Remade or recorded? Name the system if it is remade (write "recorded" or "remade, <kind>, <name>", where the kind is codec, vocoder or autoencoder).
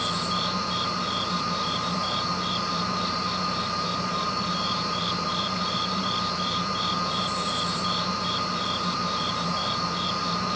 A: remade, vocoder, BigVGAN v2